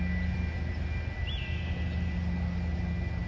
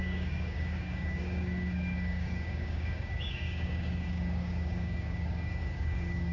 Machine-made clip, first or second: second